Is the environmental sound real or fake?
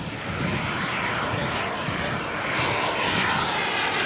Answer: real